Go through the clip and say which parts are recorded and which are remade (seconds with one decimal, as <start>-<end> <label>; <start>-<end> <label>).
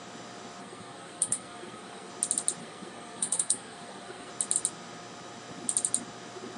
0.0-0.6 recorded; 0.6-2.1 remade; 2.1-2.6 recorded; 2.6-4.3 remade; 4.3-6.6 recorded